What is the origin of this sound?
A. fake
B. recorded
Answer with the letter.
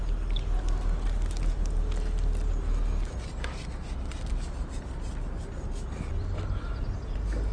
B